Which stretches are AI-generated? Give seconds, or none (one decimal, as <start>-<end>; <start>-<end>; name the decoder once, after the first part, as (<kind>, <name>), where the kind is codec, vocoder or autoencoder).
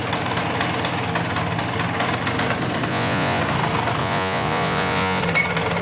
2.9-3.4 (vocoder, Vocos); 4.0-5.2